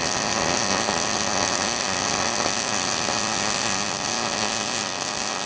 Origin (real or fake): real